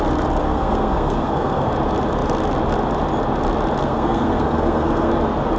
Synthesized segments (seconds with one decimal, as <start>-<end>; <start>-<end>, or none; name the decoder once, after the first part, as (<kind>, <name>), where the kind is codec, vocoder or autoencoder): 0.4-1.7 (codec, SNAC); 3.8-5.1